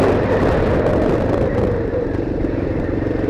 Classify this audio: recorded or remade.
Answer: recorded